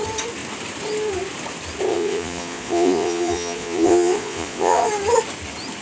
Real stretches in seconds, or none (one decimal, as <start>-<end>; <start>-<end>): 0.0-1.9; 4.9-5.8